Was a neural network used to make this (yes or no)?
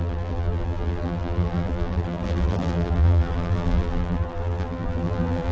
yes